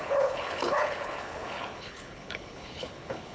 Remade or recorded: remade